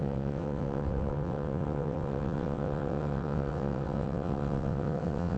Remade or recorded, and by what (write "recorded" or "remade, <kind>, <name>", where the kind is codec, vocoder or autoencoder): remade, vocoder, WaveNeXt